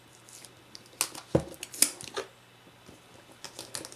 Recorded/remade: recorded